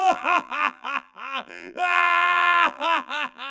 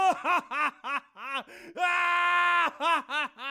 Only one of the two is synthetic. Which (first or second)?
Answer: first